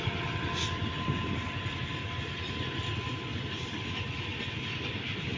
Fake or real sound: real